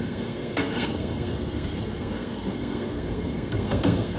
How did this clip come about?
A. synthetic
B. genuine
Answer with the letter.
A